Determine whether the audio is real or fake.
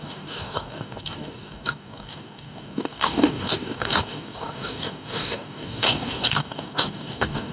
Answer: fake